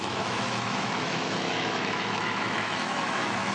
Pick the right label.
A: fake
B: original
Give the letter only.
A